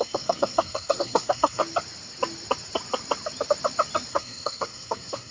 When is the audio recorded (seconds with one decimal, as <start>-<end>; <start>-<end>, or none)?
1.6-4.1